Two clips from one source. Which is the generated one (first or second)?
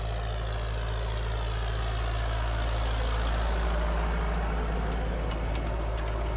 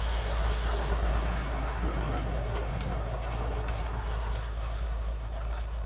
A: second